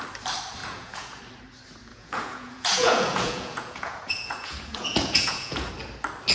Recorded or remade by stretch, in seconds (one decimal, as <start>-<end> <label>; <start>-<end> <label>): 0.0-0.6 recorded; 0.6-1.2 remade; 1.2-1.9 recorded; 1.9-5.7 remade; 5.7-6.3 recorded